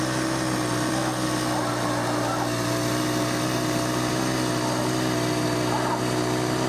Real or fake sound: real